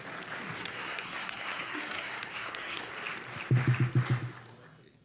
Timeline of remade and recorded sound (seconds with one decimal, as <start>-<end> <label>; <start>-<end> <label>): 0.0-0.6 recorded; 0.6-2.9 remade; 2.9-5.0 recorded